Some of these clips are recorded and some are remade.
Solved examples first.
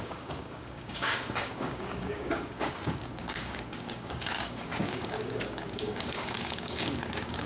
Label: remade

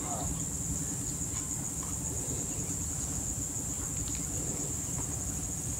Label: recorded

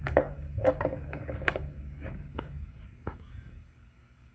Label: remade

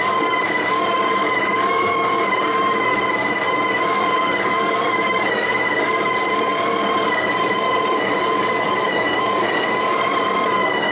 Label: remade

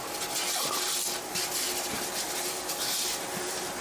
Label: recorded